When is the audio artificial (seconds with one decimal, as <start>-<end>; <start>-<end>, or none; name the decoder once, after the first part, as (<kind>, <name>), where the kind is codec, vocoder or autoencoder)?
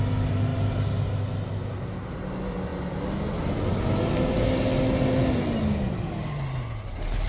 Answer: none